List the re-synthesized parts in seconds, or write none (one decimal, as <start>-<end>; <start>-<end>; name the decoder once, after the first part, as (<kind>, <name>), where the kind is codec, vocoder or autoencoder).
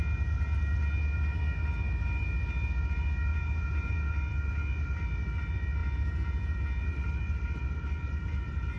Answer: 3.3-4.1 (vocoder, Vocos); 5.8-6.8